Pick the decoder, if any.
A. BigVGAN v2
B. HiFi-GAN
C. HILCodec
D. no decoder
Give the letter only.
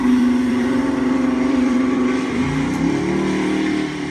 A